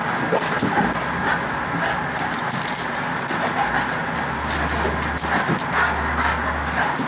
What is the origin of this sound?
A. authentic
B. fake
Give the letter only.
A